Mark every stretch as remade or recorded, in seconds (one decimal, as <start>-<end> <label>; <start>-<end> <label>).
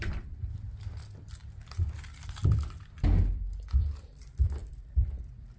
0.0-0.6 remade; 0.6-1.4 recorded; 1.4-2.0 remade; 2.0-4.6 recorded; 4.6-5.6 remade